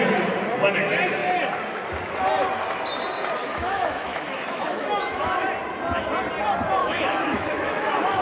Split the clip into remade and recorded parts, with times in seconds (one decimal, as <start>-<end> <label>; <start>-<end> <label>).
0.0-3.4 recorded; 3.4-5.5 remade; 5.5-6.8 recorded; 6.8-8.2 remade